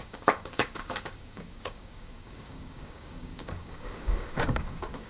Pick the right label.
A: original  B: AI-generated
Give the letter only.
B